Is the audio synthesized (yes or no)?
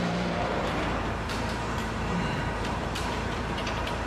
yes